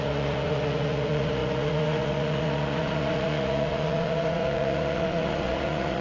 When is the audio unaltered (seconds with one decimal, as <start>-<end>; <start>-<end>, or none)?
none

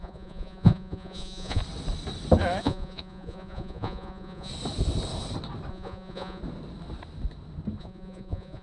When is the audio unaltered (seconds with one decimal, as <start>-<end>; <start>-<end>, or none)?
1.6-2.6; 4.5-5.7; 6.4-7.8